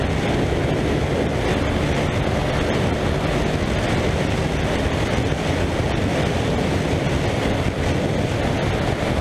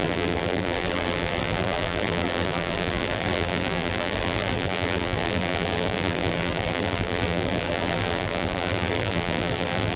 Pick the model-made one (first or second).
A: second